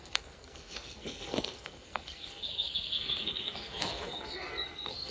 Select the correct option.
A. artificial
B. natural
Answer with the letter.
A